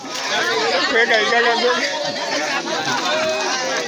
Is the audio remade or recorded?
recorded